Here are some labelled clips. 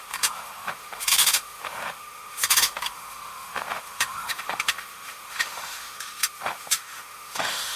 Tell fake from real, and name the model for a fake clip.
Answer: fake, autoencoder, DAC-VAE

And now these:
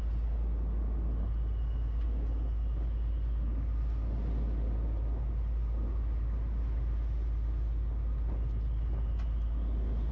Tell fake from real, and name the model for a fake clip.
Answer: real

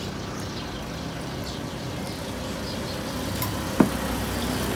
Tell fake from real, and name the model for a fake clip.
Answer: real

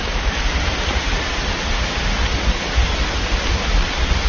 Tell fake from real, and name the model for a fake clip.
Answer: real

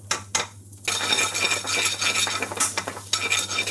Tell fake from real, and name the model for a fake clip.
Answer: real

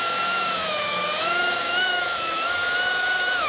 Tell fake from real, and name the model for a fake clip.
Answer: fake, autoencoder, DAC-VAE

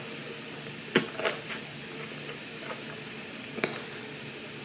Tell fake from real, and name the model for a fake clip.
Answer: real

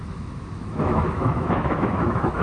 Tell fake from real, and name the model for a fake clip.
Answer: fake, autoencoder, DAC-VAE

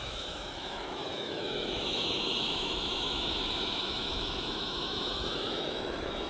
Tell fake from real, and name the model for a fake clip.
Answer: fake, autoencoder, DAC-VAE